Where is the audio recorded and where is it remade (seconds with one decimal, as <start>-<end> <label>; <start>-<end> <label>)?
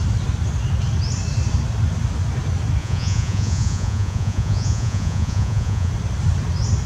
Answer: 0.0-2.8 recorded; 2.8-5.9 remade; 5.9-6.9 recorded